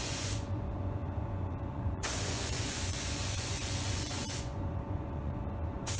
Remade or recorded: remade